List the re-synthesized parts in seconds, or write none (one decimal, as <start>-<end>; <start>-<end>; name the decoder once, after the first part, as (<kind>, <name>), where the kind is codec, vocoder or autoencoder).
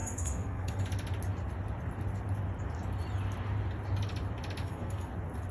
0.0-0.8 (codec, SNAC); 4.6-5.1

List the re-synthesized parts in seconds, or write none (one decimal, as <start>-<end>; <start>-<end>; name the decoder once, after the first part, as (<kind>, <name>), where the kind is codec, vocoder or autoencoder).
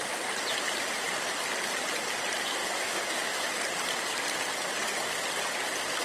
2.6-3.6 (autoencoder, DAC-VAE)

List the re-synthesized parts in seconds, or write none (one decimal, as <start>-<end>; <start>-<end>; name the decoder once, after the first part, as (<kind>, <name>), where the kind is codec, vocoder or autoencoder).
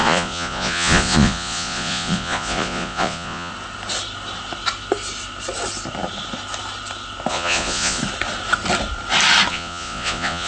0.0-3.5 (vocoder, Vocos); 7.3-8.0; 9.5-10.5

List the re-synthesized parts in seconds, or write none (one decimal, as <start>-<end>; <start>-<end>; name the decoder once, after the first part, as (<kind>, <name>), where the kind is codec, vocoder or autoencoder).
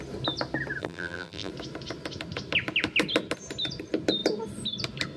0.8-1.5 (vocoder, BigVGAN v2)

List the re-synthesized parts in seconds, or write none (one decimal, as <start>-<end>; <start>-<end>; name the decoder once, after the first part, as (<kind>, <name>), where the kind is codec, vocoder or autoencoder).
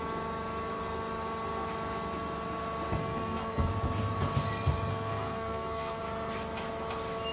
3.0-3.7 (codec, SNAC); 4.9-6.0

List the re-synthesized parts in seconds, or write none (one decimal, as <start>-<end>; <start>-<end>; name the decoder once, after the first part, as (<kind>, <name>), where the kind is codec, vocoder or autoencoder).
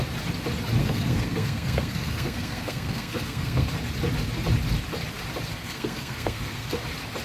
0.8-3.7 (codec, SNAC); 5.5-6.8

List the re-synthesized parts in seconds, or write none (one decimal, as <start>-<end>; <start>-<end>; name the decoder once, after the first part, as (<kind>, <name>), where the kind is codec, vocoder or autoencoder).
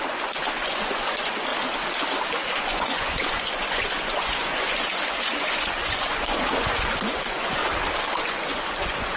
0.0-1.5 (vocoder, Vocos); 2.4-7.6; 8.2-9.2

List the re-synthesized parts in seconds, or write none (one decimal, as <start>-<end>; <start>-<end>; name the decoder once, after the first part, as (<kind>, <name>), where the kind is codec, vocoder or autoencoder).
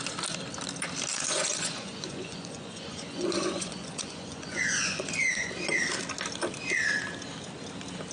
1.1-5.5 (vocoder, Vocos)